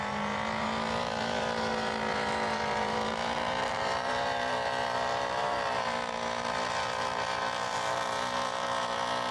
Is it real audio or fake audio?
fake